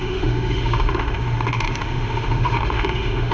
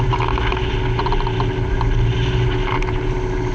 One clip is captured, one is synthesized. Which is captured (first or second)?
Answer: second